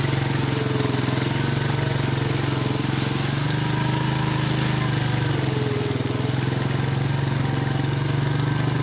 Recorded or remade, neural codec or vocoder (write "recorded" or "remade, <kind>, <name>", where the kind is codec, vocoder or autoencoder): recorded